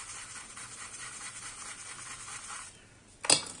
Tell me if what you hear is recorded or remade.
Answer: recorded